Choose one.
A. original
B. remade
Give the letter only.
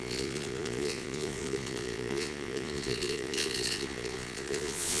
B